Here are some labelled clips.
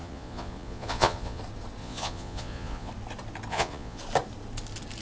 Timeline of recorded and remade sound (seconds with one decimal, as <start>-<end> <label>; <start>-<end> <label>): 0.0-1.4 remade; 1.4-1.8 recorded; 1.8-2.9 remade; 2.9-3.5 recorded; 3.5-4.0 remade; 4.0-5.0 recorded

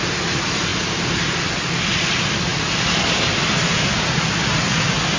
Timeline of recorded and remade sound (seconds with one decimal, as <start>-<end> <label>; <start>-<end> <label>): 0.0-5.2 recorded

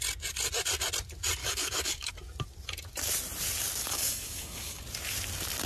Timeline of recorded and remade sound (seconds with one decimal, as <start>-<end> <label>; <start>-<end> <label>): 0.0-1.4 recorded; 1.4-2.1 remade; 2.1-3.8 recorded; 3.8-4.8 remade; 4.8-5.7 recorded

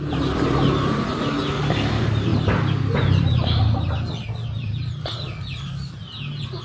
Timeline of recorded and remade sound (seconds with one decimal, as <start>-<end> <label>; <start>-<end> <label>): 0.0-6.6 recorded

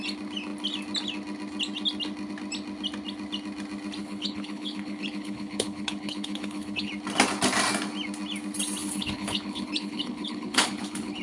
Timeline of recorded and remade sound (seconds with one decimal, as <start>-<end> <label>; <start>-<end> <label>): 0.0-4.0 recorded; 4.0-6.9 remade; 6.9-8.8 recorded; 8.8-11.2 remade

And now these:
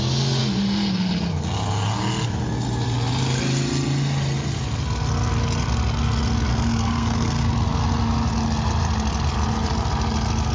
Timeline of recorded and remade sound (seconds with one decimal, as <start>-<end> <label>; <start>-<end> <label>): 0.0-6.5 recorded; 6.5-7.5 remade; 7.5-10.5 recorded

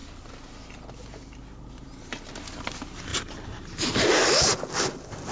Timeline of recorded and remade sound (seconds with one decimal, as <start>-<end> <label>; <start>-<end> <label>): 0.0-5.3 recorded